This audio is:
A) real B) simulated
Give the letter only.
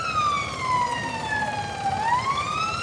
A